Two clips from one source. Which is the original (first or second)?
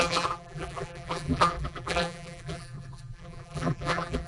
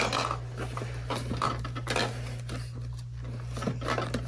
second